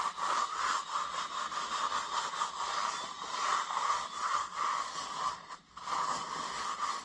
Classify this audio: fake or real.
real